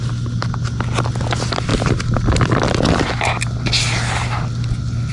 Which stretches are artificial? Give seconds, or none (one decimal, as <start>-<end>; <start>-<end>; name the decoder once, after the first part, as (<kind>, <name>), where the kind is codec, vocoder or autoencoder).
none